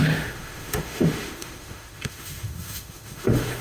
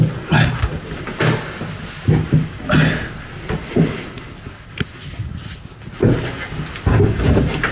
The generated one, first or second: first